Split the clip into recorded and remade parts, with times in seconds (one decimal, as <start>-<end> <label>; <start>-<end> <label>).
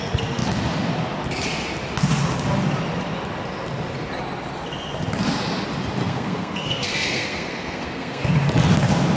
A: 0.0-6.0 recorded; 6.0-8.3 remade; 8.3-9.2 recorded